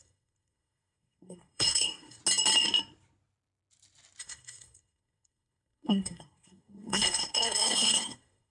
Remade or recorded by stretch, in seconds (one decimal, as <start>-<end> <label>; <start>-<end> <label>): 0.0-2.2 remade; 2.2-4.2 recorded; 4.2-8.5 remade